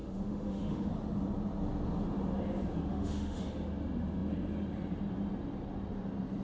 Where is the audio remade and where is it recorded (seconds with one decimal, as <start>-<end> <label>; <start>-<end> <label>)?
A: 0.0-0.9 remade; 0.9-2.9 recorded; 2.9-3.4 remade; 3.4-6.4 recorded